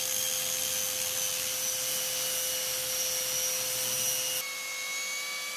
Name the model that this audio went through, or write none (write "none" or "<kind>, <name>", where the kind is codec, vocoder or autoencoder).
none